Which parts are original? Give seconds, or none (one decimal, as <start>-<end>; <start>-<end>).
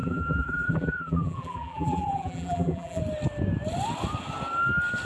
3.0-5.0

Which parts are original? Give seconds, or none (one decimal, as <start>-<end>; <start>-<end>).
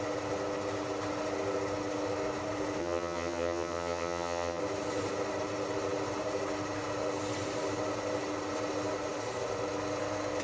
0.0-2.8; 4.6-10.4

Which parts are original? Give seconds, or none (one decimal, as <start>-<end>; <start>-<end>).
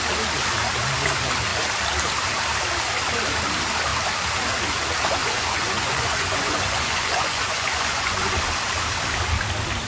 0.0-5.2; 8.3-9.9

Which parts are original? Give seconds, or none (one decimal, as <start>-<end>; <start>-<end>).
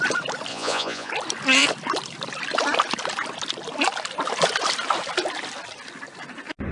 0.0-0.5; 1.1-6.7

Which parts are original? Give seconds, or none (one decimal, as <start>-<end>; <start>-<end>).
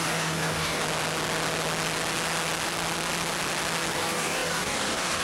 0.8-3.9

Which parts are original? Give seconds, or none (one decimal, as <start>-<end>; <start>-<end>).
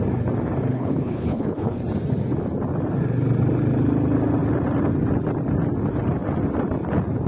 0.0-0.7; 1.8-7.3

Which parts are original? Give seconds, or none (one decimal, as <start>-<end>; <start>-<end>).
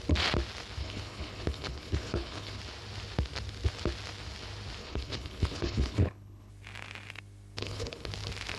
0.0-0.8; 2.6-4.8; 6.5-7.6; 8.1-8.6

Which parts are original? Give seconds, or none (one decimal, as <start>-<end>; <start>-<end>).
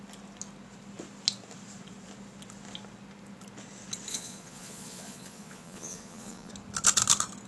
0.0-4.1; 6.5-7.5